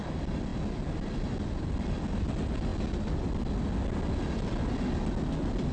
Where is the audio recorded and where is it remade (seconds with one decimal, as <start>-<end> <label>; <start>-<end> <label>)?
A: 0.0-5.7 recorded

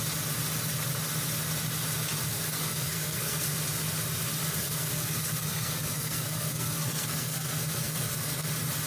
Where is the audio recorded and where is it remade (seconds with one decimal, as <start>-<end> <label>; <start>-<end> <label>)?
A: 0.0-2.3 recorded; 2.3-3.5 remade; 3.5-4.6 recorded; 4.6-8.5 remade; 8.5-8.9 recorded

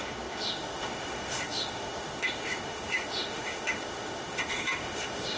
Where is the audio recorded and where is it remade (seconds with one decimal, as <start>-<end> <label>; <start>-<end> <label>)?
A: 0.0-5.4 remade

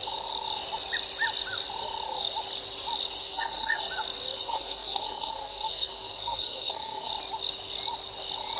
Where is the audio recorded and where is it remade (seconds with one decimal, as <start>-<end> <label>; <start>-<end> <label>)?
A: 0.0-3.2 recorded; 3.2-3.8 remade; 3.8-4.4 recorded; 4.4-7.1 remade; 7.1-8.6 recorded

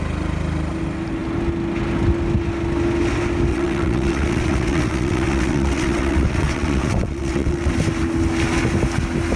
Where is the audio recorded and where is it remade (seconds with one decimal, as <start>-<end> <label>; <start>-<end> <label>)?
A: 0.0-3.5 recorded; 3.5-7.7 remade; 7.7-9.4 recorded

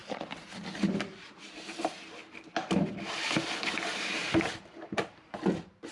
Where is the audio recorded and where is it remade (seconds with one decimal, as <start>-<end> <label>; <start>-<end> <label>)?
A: 0.0-1.5 recorded; 1.5-2.2 remade; 2.2-4.5 recorded; 4.5-5.9 remade